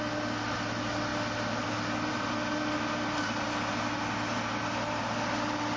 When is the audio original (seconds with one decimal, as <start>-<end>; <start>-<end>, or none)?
0.0-5.8